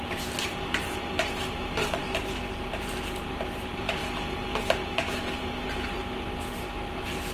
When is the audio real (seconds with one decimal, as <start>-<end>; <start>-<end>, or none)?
4.0-4.6; 6.0-6.5